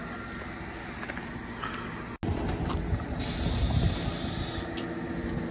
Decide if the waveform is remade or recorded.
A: recorded